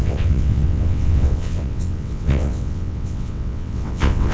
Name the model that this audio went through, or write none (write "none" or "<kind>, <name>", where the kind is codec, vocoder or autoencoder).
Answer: vocoder, WaveNeXt